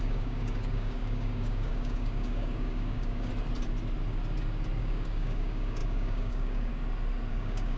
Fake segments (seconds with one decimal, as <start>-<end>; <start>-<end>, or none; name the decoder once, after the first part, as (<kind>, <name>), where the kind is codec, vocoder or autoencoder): 0.0-3.3 (codec, DAC); 4.8-6.7; 7.3-7.8

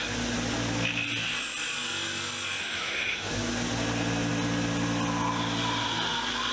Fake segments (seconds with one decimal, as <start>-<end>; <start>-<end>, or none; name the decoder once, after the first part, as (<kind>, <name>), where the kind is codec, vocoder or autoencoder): 2.6-3.3 (autoencoder, DAC-VAE)